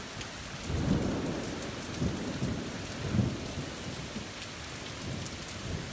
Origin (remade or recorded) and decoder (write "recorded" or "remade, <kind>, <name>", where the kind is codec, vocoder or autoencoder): recorded